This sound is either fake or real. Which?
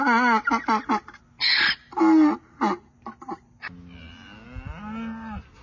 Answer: real